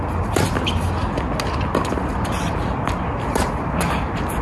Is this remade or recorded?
recorded